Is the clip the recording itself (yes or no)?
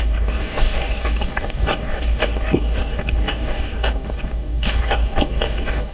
no